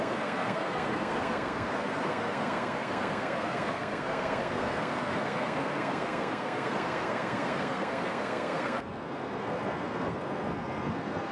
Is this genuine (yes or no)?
no